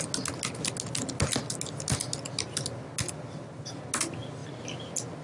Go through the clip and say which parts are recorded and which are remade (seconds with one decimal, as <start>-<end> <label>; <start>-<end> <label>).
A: 0.0-5.2 recorded